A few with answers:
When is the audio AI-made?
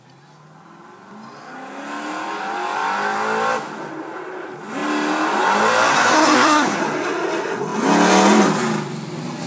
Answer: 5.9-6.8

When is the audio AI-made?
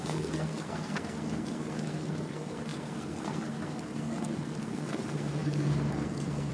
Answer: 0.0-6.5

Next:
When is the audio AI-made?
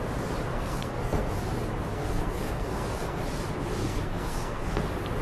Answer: 0.5-1.3; 1.9-3.2; 3.8-4.8